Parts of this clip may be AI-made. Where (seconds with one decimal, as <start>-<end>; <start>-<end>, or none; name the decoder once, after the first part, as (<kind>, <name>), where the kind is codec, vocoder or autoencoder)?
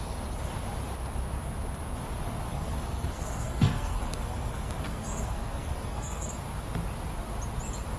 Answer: 2.5-6.3 (codec, SNAC)